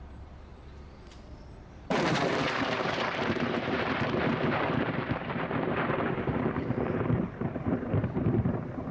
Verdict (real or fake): fake